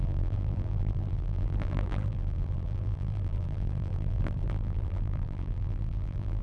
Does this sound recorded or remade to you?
remade